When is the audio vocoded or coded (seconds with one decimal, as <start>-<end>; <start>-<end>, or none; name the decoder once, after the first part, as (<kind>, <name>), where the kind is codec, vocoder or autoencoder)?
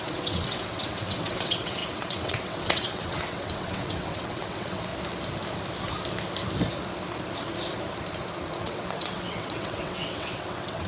0.0-4.9 (vocoder, WaveNeXt); 8.6-10.9